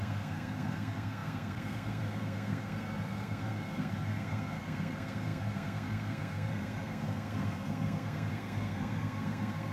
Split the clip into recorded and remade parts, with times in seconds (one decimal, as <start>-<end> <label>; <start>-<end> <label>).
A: 0.0-9.7 remade